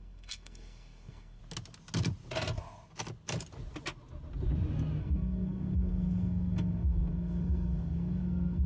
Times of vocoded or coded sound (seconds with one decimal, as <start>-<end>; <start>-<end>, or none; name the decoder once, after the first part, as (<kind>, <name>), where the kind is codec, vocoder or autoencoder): 0.0-1.4 (codec, SNAC); 5.0-8.7